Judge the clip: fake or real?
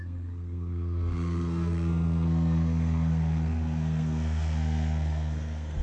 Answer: fake